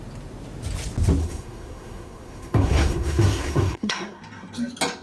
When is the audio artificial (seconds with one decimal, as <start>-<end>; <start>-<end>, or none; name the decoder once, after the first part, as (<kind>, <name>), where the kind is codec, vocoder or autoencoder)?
1.2-4.2 (codec, SNAC)